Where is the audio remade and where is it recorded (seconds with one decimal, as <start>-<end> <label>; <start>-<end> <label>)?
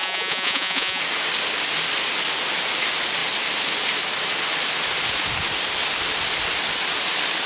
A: 0.0-1.0 remade; 1.0-7.5 recorded